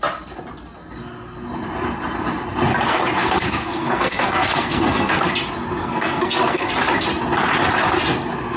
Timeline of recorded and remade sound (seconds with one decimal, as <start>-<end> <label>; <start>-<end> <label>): 0.0-2.7 recorded; 2.7-5.3 remade; 5.3-5.8 recorded; 5.8-6.7 remade; 6.7-8.6 recorded